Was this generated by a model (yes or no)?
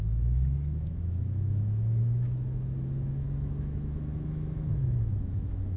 yes